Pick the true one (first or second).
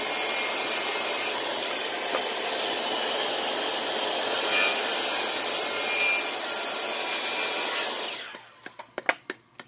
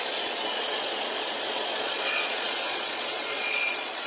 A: first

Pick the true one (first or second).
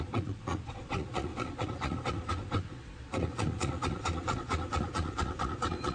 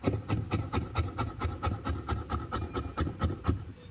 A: second